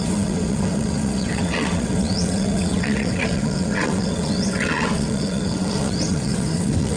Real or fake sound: fake